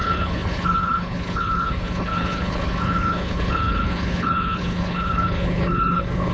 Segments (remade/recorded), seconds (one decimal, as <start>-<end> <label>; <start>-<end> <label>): 0.0-6.3 remade